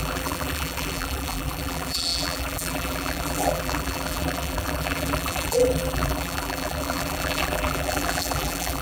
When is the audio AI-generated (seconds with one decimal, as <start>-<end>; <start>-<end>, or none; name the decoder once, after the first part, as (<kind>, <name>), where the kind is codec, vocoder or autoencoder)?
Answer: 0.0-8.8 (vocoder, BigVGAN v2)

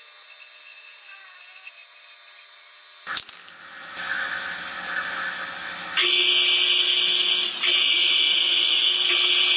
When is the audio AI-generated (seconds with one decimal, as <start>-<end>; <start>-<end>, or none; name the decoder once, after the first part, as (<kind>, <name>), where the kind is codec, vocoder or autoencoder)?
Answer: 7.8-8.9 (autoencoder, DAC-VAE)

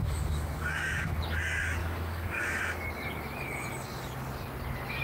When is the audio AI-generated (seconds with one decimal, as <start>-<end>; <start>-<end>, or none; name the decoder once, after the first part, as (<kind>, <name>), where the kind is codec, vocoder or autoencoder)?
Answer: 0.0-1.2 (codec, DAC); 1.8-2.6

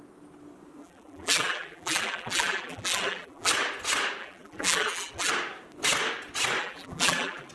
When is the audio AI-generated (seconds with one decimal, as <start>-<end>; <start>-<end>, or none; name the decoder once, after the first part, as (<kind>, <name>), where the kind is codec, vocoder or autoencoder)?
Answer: 0.8-3.5 (vocoder, BigVGAN v2); 4.2-5.3; 6.6-7.5

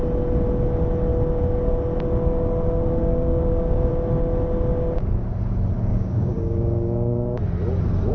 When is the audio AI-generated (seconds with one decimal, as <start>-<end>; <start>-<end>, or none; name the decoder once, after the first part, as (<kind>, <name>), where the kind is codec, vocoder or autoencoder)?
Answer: 3.0-3.9 (codec, DAC); 5.9-7.4

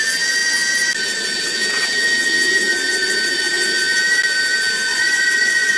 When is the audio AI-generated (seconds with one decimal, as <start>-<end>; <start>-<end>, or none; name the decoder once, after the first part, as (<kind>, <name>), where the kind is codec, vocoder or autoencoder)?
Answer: 4.9-5.8 (vocoder, Vocos)

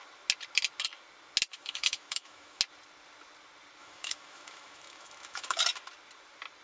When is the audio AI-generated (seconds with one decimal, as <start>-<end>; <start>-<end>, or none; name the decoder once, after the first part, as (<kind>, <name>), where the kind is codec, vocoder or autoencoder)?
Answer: 1.5-2.6 (autoencoder, DAC-VAE); 3.8-5.6